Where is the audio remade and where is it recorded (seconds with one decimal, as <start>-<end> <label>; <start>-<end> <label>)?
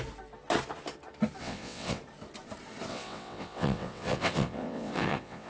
0.0-1.4 recorded; 1.4-2.0 remade; 2.0-2.9 recorded; 2.9-5.5 remade